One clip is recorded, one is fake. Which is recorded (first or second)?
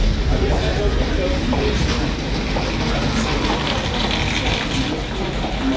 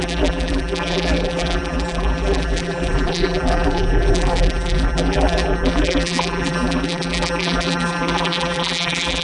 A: first